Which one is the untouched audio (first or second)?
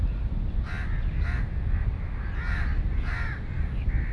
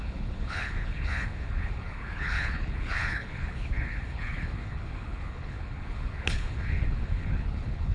first